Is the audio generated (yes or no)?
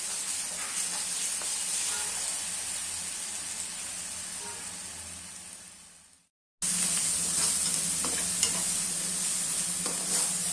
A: no